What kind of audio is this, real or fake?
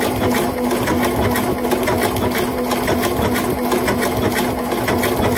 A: real